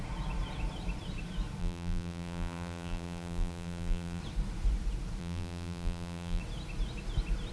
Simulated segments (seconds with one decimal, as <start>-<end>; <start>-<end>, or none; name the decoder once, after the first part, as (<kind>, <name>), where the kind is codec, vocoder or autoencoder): 1.6-4.2 (vocoder, BigVGAN v2); 5.2-6.4